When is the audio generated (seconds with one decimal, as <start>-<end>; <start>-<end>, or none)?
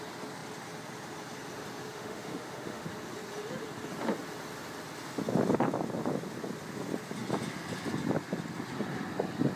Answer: 1.9-2.9